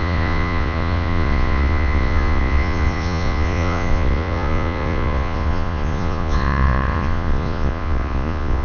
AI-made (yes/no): yes